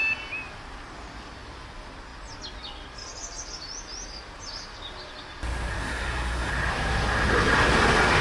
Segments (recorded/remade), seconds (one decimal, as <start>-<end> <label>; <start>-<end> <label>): 0.0-5.8 recorded; 5.8-6.5 remade; 6.5-8.2 recorded